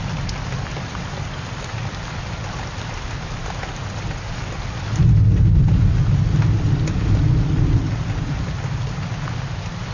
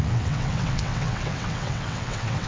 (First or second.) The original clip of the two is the first